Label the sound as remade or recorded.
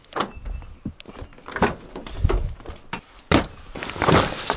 recorded